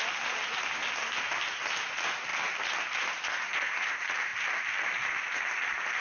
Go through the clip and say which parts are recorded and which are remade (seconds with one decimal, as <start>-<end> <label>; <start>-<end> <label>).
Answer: 0.0-6.0 recorded